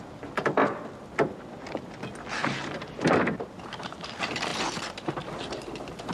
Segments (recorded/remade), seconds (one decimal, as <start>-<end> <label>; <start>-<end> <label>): 0.0-6.1 recorded